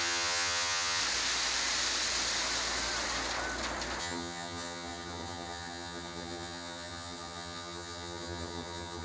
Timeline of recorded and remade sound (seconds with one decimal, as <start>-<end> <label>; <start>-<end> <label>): 0.0-1.0 remade; 1.0-4.0 recorded; 4.0-9.0 remade